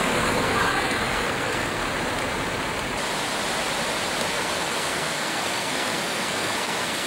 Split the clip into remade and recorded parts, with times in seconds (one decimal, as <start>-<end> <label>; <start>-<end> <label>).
0.0-1.8 remade; 1.8-4.3 recorded; 4.3-7.1 remade

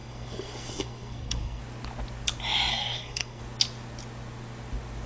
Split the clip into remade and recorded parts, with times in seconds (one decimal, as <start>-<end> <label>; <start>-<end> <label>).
0.0-1.6 remade; 1.6-2.7 recorded; 2.7-3.4 remade; 3.4-5.1 recorded

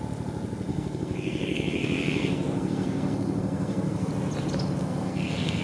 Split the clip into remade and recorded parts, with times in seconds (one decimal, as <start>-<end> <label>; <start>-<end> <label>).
0.0-0.7 recorded; 0.7-4.1 remade; 4.1-4.8 recorded; 4.8-5.6 remade